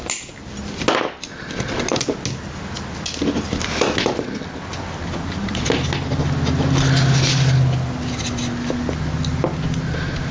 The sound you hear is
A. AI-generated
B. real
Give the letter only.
B